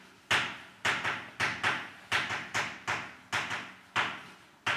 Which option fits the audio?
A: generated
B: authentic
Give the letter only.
B